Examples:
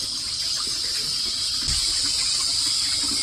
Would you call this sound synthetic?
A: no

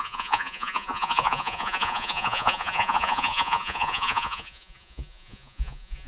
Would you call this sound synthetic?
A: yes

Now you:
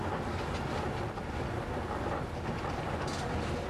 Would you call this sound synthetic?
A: no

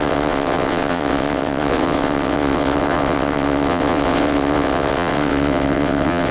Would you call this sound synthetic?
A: yes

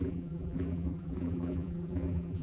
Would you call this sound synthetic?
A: yes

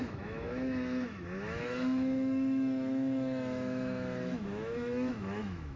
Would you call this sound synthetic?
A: yes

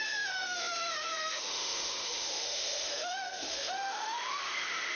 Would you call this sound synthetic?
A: yes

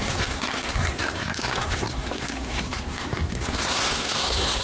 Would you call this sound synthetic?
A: yes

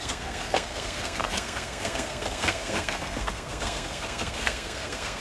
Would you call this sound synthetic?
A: yes